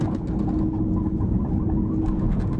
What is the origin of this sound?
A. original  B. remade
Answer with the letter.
A